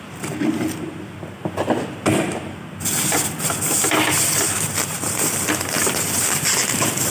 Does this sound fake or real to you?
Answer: real